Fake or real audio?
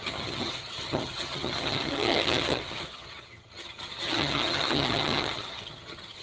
fake